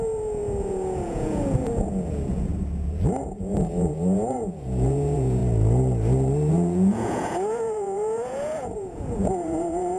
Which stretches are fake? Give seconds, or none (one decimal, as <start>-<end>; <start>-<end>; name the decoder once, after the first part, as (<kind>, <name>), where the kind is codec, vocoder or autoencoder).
0.0-2.5 (vocoder, Vocos); 3.2-5.4; 6.5-10.0